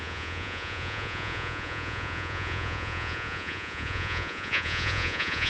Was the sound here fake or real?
fake